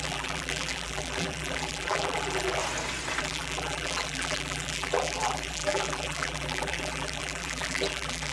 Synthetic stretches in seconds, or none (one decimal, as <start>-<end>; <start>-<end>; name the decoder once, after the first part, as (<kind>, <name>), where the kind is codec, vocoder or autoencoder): 0.0-2.6 (vocoder, BigVGAN v2); 3.2-8.3